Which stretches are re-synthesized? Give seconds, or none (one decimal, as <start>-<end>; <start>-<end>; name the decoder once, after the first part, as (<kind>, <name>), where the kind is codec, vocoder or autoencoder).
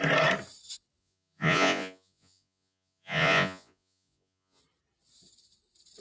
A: 1.0-4.6 (vocoder, Vocos)